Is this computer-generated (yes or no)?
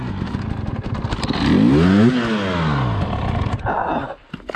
no